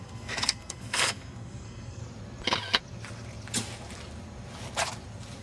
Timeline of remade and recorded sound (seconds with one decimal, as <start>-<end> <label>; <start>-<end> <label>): 0.0-2.0 remade; 2.0-5.4 recorded